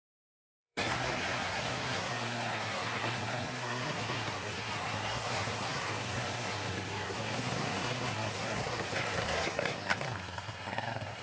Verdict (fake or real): fake